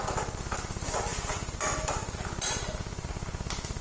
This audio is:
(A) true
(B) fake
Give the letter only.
A